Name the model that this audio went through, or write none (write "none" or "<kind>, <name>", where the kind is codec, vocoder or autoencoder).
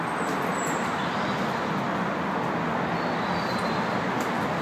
none